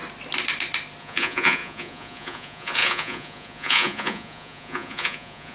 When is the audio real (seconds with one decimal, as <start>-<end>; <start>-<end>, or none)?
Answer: 0.0-1.0